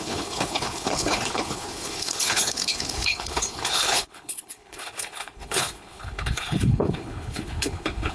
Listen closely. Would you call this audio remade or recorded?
remade